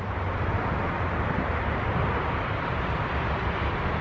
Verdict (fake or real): fake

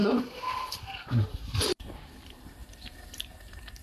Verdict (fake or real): fake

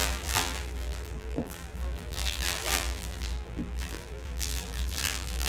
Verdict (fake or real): fake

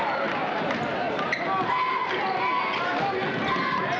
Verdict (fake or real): real